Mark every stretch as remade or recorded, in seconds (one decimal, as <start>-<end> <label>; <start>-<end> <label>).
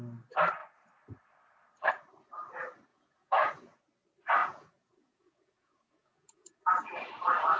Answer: 0.0-2.9 recorded; 2.9-3.8 remade; 3.8-4.4 recorded; 4.4-6.8 remade; 6.8-7.6 recorded